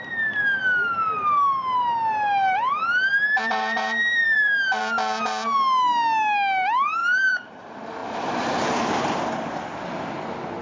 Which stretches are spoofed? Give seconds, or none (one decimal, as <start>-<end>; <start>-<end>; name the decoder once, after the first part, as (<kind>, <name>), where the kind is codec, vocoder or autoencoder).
3.1-4.8 (vocoder, BigVGAN v2); 7.0-7.6; 8.0-9.2